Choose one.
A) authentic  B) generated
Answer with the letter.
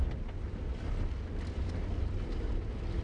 A